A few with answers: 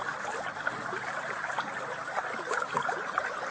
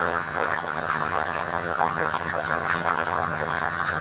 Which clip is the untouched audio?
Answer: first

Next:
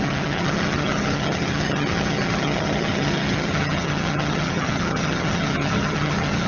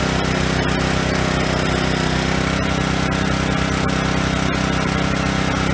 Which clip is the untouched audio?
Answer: second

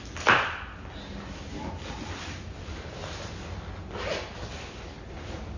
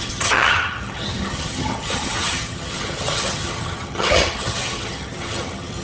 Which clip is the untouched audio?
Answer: first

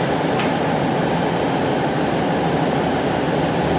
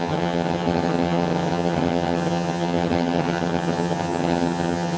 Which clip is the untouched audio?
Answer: first